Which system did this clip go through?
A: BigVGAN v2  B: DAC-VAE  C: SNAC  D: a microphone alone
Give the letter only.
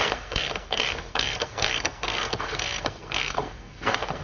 C